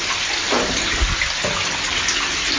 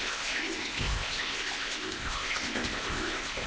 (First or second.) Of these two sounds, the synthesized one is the second